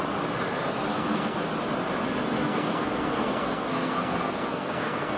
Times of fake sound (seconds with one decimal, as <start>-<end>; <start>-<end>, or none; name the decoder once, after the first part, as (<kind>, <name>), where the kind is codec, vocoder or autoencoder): 0.9-1.5 (codec, SNAC); 2.4-5.2